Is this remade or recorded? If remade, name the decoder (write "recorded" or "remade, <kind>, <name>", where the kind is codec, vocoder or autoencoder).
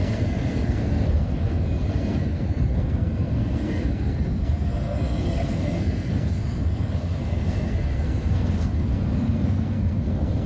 remade, codec, SNAC